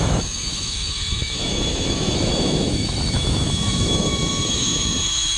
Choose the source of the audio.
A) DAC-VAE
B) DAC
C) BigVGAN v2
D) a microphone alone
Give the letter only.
A